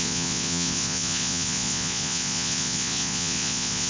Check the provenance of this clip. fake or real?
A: fake